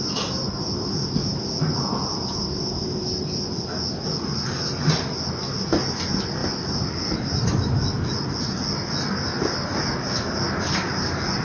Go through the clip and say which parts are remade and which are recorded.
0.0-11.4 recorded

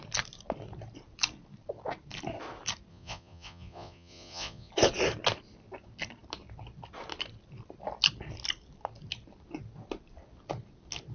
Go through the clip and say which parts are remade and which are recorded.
0.0-2.9 recorded; 2.9-4.7 remade; 4.7-11.1 recorded

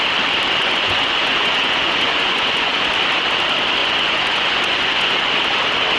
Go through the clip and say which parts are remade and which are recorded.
0.0-0.6 recorded; 0.6-2.9 remade; 2.9-3.8 recorded; 3.8-5.2 remade; 5.2-6.0 recorded

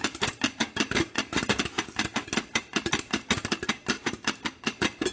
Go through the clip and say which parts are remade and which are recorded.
0.0-5.1 recorded

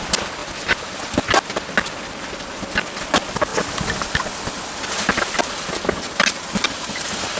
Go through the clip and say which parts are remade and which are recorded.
0.0-7.4 recorded

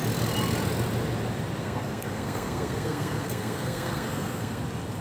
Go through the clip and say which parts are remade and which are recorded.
0.0-1.6 recorded; 1.6-4.6 remade; 4.6-5.0 recorded

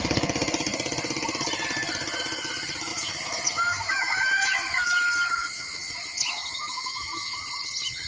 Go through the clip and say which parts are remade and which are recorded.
0.0-2.9 recorded; 2.9-7.4 remade; 7.4-8.1 recorded